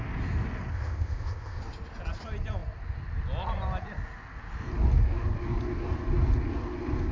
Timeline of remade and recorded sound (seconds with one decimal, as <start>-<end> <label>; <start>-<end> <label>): 0.0-0.7 recorded; 0.7-1.6 remade; 1.6-7.1 recorded